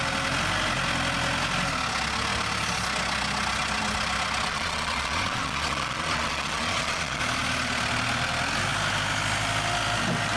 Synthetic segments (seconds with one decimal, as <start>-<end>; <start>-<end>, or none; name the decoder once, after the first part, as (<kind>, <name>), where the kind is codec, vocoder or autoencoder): 4.5-7.2 (vocoder, Vocos)